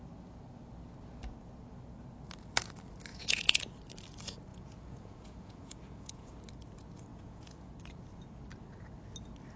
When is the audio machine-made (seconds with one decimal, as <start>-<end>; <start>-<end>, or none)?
3.1-3.6; 4.5-6.3; 7.1-7.7